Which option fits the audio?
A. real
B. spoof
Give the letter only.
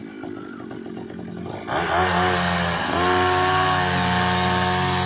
A